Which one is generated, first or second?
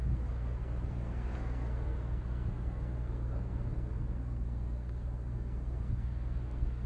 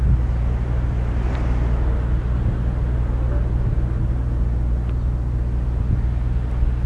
first